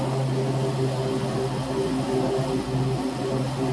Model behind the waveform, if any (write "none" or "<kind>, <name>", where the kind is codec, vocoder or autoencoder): none